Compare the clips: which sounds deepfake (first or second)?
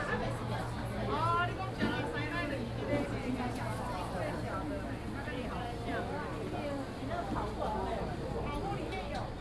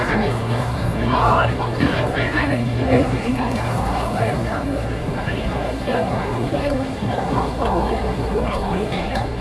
second